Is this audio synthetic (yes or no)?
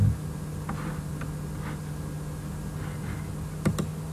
no